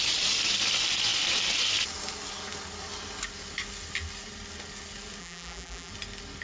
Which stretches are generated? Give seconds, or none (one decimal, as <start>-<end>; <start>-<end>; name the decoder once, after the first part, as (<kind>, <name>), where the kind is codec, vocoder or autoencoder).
5.2-5.9 (vocoder, BigVGAN v2)